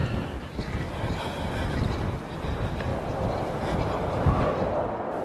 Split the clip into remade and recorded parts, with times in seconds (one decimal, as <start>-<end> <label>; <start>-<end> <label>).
0.0-0.6 remade; 0.6-5.2 recorded